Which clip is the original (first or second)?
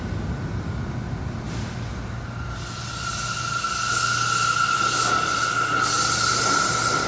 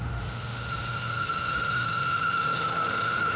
first